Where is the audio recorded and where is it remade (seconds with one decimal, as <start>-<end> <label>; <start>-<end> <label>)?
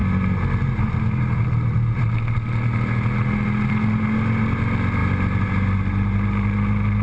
0.0-7.0 recorded